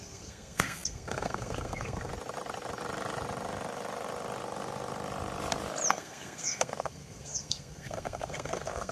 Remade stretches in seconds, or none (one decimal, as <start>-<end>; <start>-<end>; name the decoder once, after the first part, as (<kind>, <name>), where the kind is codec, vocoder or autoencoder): 0.0-2.1 (codec, SNAC); 5.9-8.9